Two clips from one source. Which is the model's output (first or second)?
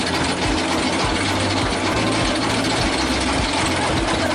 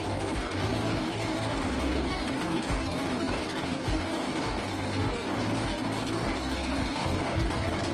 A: second